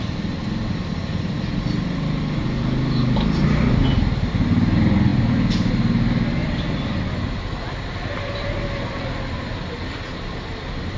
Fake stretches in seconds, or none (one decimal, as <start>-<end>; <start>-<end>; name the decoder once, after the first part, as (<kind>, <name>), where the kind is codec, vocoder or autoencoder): none